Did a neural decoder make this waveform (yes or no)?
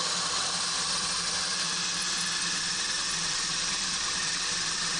yes